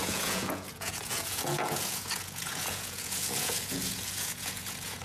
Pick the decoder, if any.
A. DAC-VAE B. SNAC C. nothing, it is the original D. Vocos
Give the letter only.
D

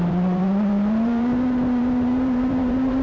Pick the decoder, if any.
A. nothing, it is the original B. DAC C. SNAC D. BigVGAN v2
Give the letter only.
D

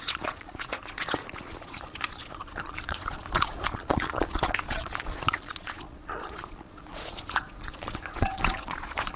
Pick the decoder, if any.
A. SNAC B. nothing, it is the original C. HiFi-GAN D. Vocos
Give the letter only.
D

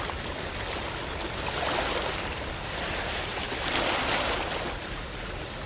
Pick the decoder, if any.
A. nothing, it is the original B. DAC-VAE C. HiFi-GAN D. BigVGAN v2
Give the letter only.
A